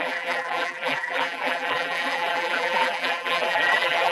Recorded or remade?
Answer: remade